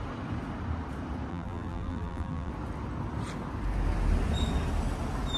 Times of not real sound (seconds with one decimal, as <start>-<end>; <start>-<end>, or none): 1.3-2.5